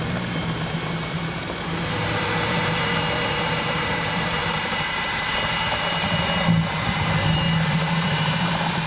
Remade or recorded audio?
remade